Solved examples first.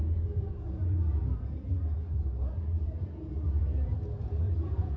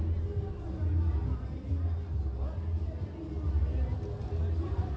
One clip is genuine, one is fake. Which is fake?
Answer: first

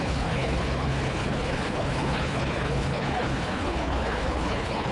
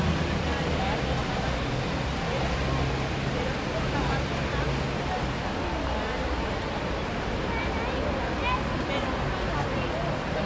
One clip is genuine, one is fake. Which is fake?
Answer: first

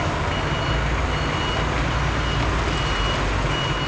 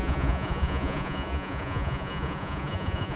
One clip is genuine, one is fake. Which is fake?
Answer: second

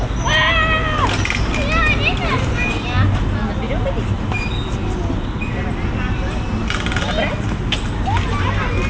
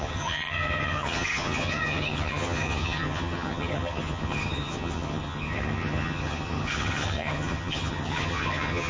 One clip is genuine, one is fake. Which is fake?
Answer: second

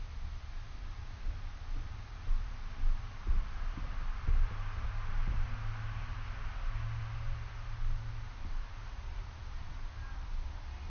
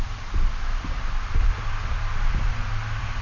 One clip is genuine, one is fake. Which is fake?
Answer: second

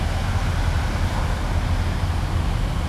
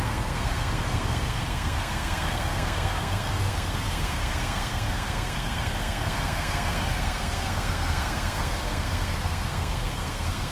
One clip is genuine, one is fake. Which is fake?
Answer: second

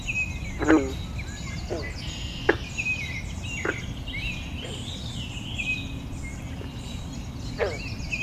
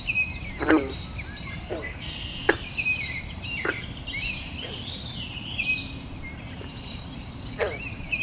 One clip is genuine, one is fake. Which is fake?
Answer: second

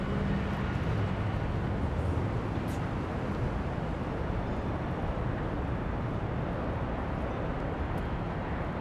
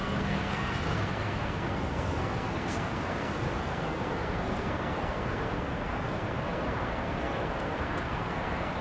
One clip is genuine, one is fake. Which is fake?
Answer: second